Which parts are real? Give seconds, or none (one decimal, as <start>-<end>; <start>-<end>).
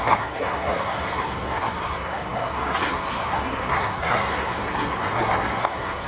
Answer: none